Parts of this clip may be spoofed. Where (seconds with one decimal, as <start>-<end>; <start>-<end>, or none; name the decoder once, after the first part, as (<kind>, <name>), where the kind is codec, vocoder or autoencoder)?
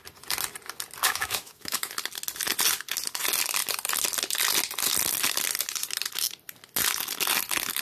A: 1.0-1.9 (autoencoder, DAC-VAE)